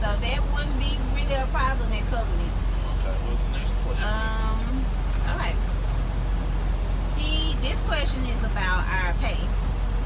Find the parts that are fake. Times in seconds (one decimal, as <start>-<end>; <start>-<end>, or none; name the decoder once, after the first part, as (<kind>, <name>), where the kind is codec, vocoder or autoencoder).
none